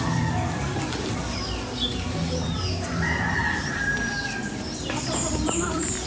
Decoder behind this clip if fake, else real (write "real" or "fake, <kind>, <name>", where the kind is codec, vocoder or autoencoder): fake, vocoder, BigVGAN v2